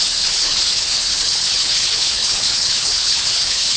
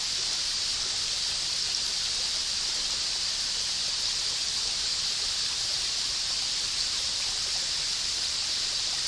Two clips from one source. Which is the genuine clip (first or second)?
second